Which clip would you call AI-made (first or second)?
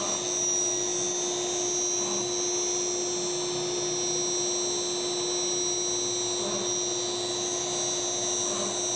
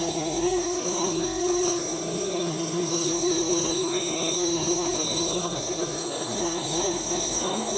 second